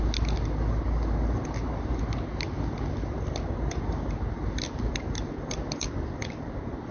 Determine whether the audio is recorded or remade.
recorded